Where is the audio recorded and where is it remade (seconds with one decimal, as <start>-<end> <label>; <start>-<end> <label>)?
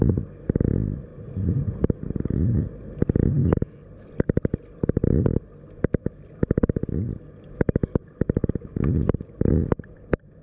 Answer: 0.0-1.1 recorded; 1.1-2.9 remade; 2.9-8.4 recorded; 8.4-9.5 remade; 9.5-10.4 recorded